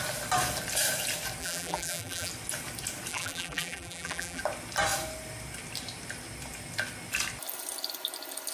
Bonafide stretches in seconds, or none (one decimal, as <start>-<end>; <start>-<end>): 0.0-1.4; 2.3-3.1; 4.4-8.5